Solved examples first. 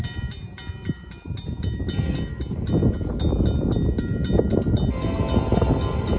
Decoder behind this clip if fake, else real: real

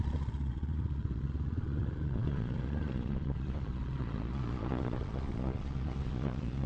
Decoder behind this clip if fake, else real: fake, vocoder, Vocos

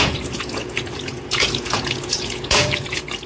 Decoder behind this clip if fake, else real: fake, vocoder, Vocos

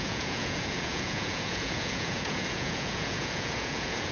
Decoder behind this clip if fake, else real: fake, vocoder, Vocos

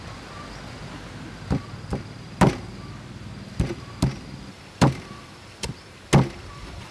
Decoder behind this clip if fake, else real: real